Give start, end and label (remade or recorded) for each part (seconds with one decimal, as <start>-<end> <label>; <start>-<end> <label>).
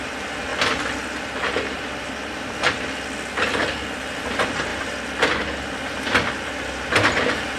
0.0-7.6 recorded